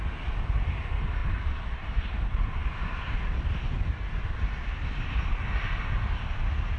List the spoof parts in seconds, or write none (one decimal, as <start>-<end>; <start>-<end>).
1.2-2.0